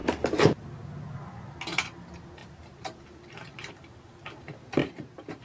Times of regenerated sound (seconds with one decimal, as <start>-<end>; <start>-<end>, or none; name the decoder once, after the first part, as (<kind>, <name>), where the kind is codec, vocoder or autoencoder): 0.0-1.1 (vocoder, BigVGAN v2); 2.4-3.7; 4.8-5.4